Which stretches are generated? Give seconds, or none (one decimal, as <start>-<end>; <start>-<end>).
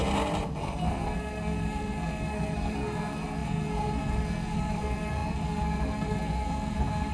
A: 0.6-7.1